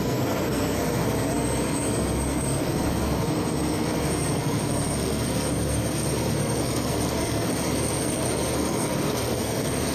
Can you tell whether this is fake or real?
fake